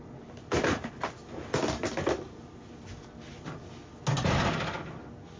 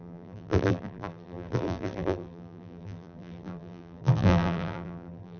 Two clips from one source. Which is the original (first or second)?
first